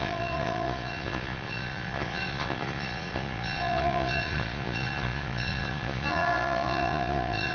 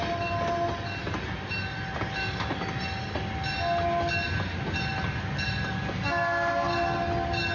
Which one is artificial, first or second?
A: first